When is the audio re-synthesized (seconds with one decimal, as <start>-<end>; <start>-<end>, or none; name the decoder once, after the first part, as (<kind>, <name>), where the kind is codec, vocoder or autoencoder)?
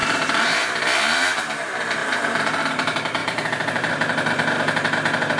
0.0-0.7 (vocoder, BigVGAN v2); 2.0-2.6; 3.2-3.9